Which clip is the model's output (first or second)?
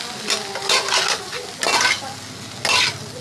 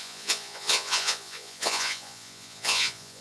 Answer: second